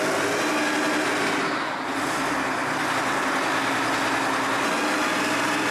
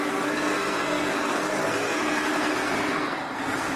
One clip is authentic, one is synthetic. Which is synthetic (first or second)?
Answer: second